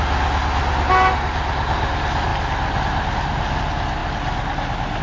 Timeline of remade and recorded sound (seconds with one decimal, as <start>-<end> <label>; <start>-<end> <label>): 0.0-5.0 recorded